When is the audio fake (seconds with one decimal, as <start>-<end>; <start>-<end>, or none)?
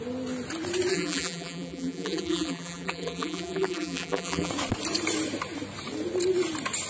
0.9-4.5